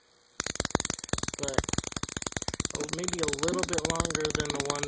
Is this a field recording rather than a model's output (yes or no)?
yes